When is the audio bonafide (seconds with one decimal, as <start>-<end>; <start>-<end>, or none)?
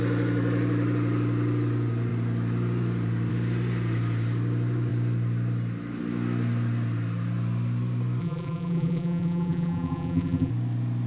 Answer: 0.0-8.2; 10.5-11.1